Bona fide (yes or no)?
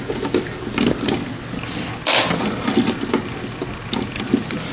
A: yes